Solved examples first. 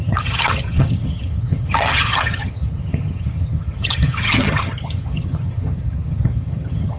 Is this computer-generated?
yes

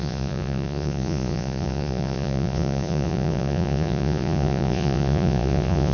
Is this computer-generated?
yes